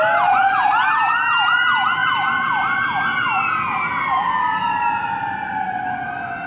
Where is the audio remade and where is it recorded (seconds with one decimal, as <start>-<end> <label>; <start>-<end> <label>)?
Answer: 0.0-6.5 recorded